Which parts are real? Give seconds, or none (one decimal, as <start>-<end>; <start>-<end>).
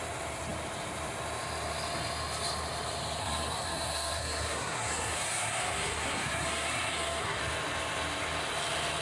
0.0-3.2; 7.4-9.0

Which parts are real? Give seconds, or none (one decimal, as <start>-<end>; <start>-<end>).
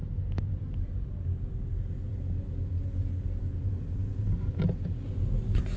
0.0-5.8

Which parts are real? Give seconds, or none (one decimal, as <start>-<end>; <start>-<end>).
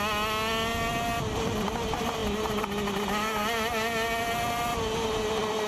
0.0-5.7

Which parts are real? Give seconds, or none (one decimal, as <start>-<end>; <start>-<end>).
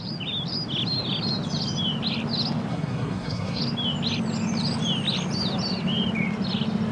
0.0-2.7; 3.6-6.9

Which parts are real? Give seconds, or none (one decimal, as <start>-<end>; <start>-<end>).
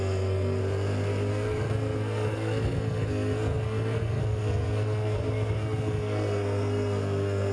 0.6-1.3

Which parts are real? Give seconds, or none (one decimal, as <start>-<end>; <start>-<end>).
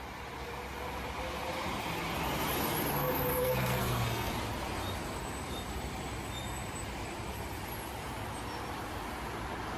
0.0-3.3; 4.3-9.8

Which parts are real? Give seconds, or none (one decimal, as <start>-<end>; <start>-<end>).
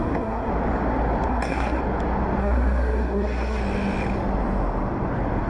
0.5-1.3; 1.8-2.4; 3.6-5.5